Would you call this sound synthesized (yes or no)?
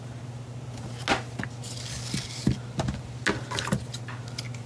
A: no